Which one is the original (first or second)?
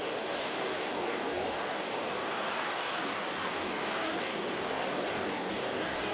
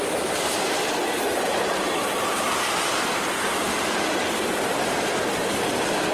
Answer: second